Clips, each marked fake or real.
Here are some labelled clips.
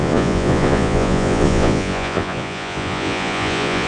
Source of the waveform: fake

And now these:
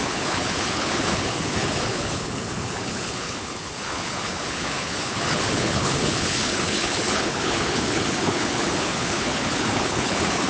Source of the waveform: fake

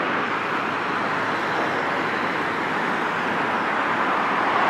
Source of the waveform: real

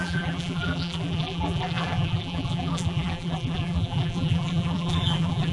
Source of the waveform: fake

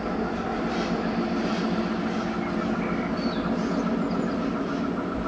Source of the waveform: real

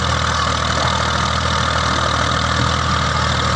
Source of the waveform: real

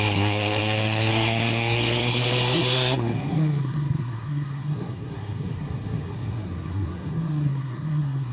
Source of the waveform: fake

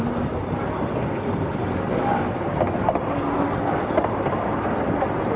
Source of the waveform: real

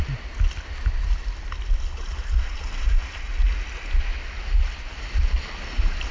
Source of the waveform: real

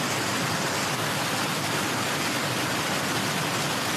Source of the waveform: real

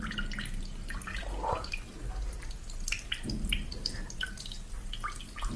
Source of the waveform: real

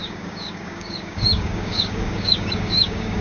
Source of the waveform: fake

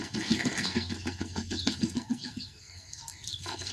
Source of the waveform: fake